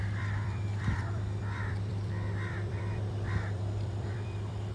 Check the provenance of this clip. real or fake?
fake